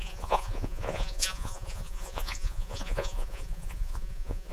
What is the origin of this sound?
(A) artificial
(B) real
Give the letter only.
A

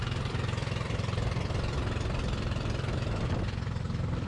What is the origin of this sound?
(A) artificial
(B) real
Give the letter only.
A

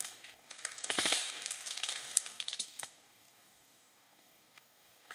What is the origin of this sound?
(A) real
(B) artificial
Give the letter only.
B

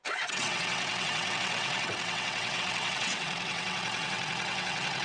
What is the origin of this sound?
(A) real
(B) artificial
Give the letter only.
B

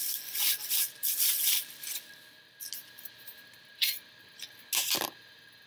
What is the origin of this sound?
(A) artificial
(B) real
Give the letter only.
B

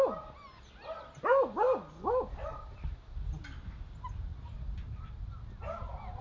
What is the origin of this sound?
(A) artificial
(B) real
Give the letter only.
B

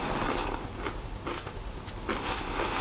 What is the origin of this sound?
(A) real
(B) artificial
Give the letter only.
A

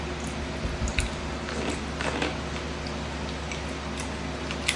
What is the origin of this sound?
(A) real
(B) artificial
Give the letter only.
A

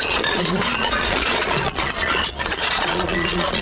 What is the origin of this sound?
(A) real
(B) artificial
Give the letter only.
B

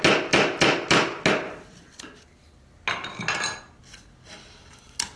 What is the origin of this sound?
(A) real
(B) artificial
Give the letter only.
A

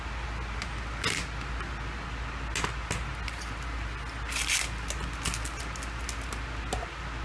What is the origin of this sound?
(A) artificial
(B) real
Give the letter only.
B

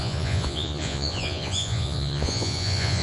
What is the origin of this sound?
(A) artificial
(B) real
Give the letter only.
A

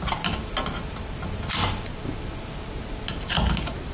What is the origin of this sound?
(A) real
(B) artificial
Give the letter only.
A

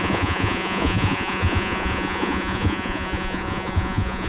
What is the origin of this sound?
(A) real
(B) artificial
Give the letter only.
B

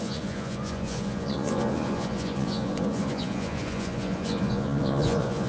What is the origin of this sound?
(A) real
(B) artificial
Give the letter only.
B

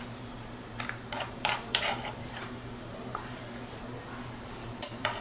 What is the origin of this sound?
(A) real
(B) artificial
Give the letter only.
B